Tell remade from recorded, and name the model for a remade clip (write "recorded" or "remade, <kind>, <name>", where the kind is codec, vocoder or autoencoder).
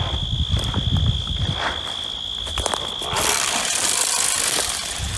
recorded